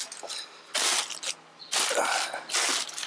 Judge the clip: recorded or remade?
recorded